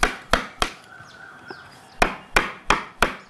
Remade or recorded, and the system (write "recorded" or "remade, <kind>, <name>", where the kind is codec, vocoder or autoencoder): recorded